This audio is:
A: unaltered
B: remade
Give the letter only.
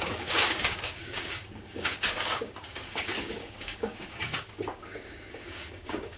B